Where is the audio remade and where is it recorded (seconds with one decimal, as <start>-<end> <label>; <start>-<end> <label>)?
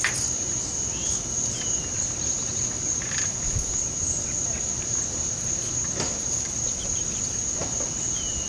0.0-8.5 recorded